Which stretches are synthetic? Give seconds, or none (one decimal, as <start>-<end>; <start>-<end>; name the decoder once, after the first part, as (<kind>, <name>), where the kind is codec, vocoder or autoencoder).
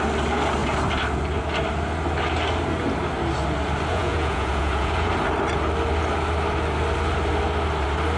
3.9-5.1 (vocoder, Vocos)